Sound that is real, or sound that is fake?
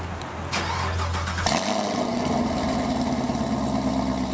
real